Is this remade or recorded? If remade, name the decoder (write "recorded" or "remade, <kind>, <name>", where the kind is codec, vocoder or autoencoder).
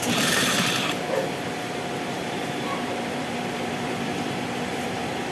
remade, vocoder, BigVGAN v2